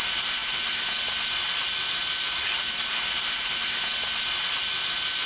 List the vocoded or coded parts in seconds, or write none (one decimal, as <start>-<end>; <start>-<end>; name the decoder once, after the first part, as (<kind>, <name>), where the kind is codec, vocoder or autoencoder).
none